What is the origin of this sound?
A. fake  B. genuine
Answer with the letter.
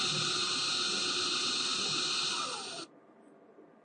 B